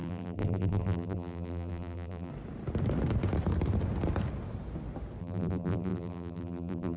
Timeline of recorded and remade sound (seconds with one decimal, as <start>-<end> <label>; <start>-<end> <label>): 0.0-2.3 remade; 2.3-5.2 recorded; 5.2-7.0 remade